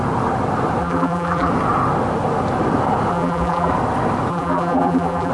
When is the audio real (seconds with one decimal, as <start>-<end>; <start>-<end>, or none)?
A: 0.0-0.8; 1.5-3.1; 3.7-4.3